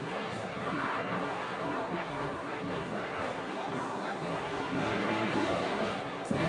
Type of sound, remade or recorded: remade